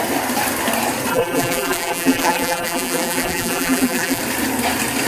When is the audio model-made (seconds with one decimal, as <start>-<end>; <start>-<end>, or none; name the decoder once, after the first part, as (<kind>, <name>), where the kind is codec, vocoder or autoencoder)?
1.1-4.2 (vocoder, BigVGAN v2)